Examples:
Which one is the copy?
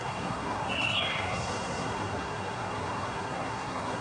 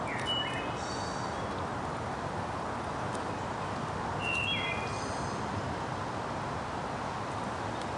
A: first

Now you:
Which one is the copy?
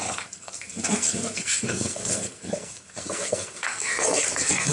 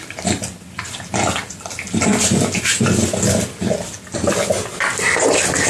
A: first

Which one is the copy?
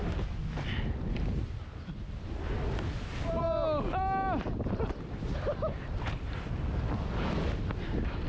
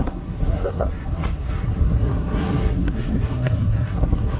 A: second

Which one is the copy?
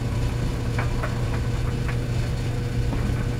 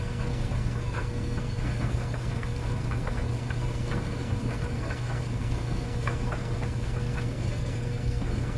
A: second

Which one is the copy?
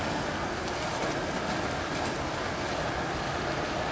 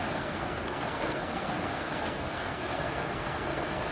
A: second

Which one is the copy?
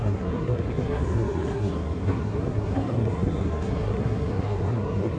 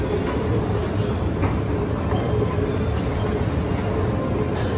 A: first